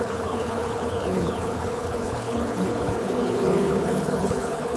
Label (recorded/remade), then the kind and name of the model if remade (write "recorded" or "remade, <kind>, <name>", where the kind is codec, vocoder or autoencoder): remade, codec, HILCodec